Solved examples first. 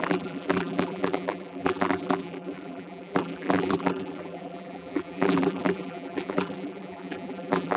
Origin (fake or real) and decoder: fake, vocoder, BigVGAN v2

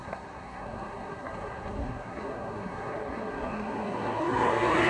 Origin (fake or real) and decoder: fake, codec, SNAC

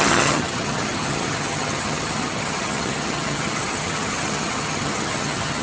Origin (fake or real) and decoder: fake, vocoder, HiFi-GAN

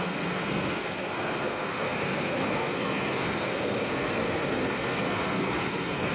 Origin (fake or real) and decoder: fake, codec, SNAC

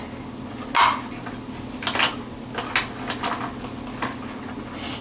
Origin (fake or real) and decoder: real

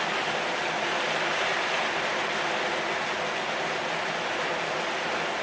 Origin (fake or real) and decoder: real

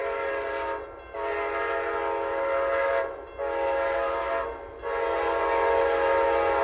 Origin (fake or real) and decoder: real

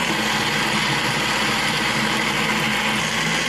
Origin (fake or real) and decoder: real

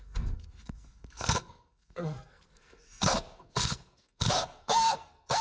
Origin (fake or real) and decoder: fake, codec, SNAC